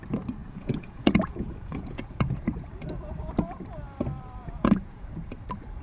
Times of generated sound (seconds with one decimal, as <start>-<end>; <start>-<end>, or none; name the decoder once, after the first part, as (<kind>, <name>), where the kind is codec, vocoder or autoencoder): 0.4-2.7 (vocoder, Vocos); 4.4-5.3